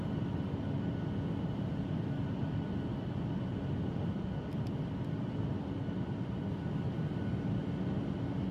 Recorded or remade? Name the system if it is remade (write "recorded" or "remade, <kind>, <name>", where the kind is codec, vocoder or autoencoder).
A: recorded